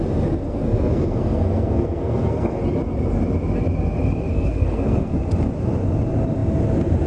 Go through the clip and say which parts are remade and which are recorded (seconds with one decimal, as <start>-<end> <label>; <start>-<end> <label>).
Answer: 0.0-0.4 recorded; 0.4-2.6 remade; 2.6-4.3 recorded; 4.3-5.2 remade; 5.2-7.1 recorded